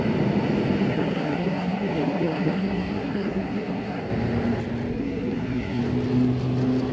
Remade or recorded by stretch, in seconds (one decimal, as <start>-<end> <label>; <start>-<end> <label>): 0.0-0.9 recorded; 0.9-4.0 remade; 4.0-4.9 recorded; 4.9-5.8 remade; 5.8-6.9 recorded